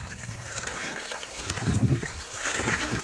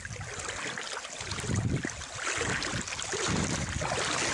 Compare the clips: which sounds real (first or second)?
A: second